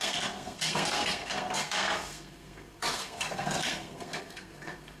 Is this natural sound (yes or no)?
no